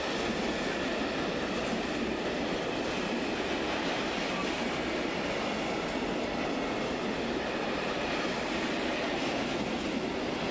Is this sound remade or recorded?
recorded